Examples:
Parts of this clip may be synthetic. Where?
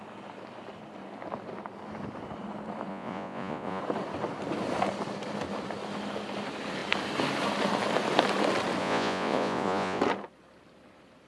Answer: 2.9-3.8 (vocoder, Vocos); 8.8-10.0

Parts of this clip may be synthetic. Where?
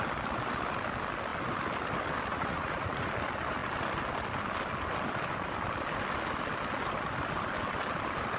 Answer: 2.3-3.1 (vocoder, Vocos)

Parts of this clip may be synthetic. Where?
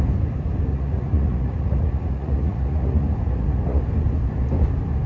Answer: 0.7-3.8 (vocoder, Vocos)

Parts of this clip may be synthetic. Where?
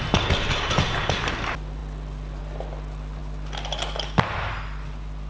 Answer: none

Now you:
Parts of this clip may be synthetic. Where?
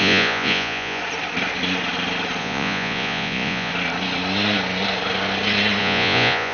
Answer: 0.0-1.0 (vocoder, Vocos); 2.4-3.7; 5.8-6.5